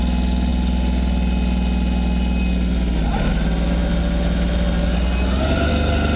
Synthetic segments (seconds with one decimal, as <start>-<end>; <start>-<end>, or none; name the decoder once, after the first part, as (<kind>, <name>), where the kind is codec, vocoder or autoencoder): none